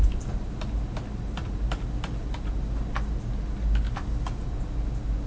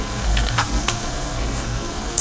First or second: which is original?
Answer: first